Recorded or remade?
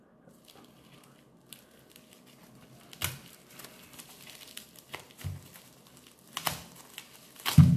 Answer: recorded